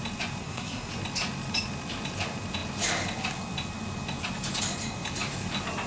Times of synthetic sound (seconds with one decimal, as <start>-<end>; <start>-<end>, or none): 0.4-0.9